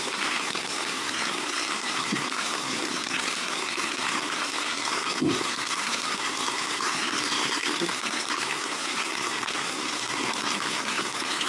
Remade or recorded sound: remade